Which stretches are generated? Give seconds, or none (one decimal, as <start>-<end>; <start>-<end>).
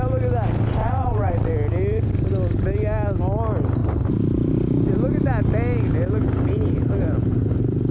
0.8-1.5